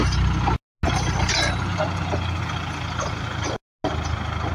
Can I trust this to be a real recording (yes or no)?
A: yes